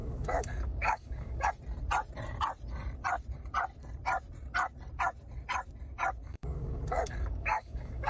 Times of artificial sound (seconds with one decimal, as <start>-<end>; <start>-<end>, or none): 0.0-1.5; 6.2-8.1